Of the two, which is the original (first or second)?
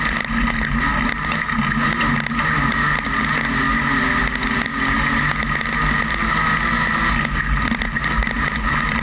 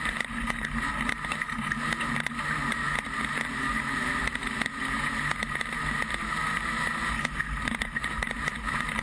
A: first